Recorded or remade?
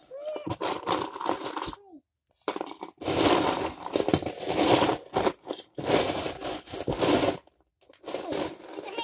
recorded